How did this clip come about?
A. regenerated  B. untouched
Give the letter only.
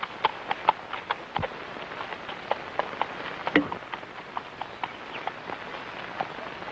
B